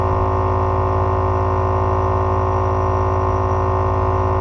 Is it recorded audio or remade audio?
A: recorded